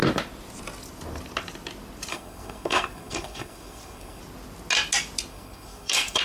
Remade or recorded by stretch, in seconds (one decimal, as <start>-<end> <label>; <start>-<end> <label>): 0.0-2.1 recorded; 2.1-4.2 remade; 4.2-5.3 recorded; 5.3-6.2 remade